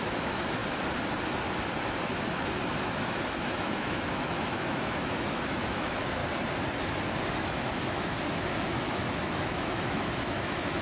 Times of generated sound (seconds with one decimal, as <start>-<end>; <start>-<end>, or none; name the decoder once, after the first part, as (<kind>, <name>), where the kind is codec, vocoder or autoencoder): 0.0-0.6 (autoencoder, DAC-VAE); 2.7-6.2; 7.4-10.8